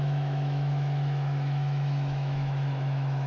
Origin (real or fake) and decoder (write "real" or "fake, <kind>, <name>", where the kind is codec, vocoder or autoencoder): fake, autoencoder, DAC-VAE